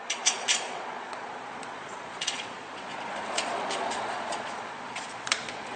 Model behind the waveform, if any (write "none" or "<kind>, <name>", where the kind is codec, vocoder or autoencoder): vocoder, Vocos